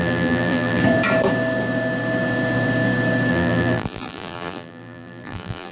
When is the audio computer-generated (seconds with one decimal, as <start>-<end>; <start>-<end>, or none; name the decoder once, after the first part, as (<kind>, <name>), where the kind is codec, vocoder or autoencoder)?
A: 0.0-0.8 (vocoder, BigVGAN v2); 3.3-5.7